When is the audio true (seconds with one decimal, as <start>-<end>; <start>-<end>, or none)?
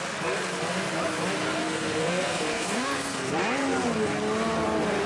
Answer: 0.0-1.6; 3.3-5.1